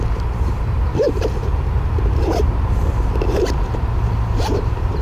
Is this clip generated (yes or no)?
yes